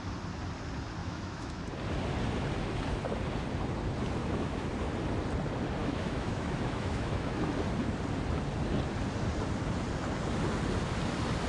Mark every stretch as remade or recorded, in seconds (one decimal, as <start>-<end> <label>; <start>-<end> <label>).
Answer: 0.0-1.0 recorded; 1.0-1.6 remade; 1.6-4.2 recorded; 4.2-4.7 remade; 4.7-5.8 recorded; 5.8-7.5 remade; 7.5-11.5 recorded

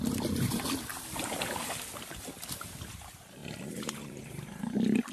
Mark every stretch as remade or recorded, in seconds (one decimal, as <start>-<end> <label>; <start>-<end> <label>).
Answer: 0.0-3.4 recorded; 3.4-4.6 remade; 4.6-5.1 recorded

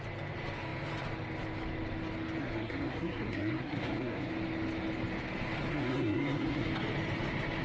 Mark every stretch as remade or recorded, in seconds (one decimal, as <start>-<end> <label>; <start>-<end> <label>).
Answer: 0.0-2.4 recorded; 2.4-4.3 remade; 4.3-5.7 recorded; 5.7-6.7 remade; 6.7-7.6 recorded

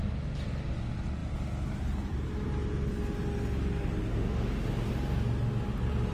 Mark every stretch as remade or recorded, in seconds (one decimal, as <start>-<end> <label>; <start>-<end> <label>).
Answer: 0.0-4.1 recorded; 4.1-4.7 remade; 4.7-6.1 recorded

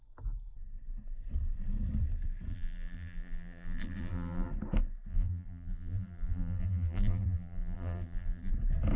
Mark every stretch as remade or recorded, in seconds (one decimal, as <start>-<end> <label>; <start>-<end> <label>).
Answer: 0.0-2.5 recorded; 2.5-4.5 remade; 4.5-5.1 recorded; 5.1-8.5 remade; 8.5-9.0 recorded

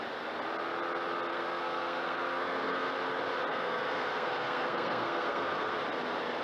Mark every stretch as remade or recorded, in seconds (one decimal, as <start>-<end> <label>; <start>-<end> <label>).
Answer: 0.0-1.3 recorded; 1.3-2.9 remade; 2.9-3.5 recorded; 3.5-5.7 remade; 5.7-6.4 recorded

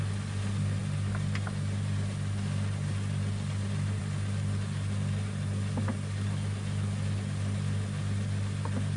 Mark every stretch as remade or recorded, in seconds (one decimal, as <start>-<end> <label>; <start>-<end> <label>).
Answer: 0.0-9.0 recorded

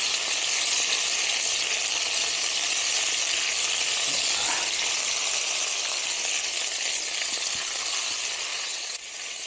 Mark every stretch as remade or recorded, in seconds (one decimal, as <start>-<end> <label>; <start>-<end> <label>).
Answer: 0.0-8.5 recorded; 8.5-9.1 remade; 9.1-9.5 recorded